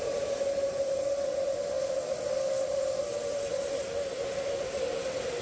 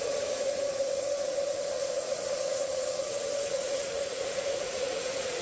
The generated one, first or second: second